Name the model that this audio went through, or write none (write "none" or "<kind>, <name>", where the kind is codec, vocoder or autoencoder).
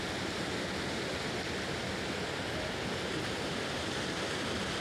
none